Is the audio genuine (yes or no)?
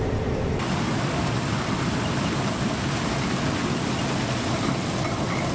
yes